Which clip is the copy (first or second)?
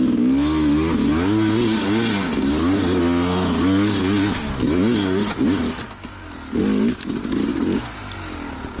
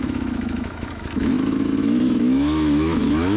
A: second